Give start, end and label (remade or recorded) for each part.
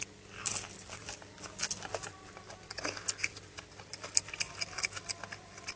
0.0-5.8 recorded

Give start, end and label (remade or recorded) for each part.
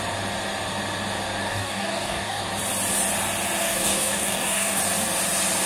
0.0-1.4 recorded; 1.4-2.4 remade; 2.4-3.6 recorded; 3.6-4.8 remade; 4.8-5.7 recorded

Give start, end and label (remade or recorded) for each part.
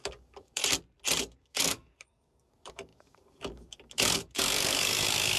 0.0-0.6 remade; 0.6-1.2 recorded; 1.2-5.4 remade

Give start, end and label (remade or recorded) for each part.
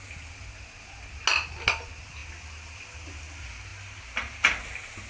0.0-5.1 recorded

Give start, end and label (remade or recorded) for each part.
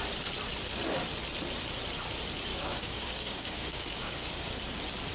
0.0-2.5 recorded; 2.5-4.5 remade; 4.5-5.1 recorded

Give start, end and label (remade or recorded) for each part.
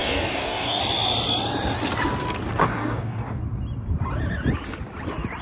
0.0-0.8 remade; 0.8-2.6 recorded; 2.6-3.4 remade; 3.4-5.4 recorded